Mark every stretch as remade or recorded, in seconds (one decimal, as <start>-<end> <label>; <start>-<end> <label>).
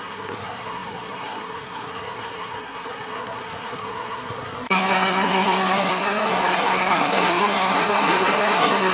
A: 0.0-8.9 remade